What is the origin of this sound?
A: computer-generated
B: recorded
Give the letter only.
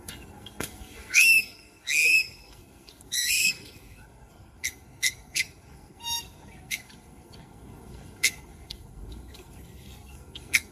A